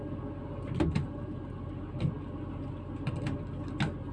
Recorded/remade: recorded